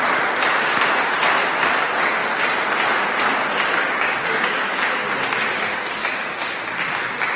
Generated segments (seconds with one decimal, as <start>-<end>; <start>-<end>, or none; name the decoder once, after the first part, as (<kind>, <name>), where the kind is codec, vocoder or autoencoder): 3.8-4.9 (codec, DAC)